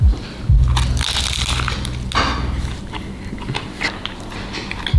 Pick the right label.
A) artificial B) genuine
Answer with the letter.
B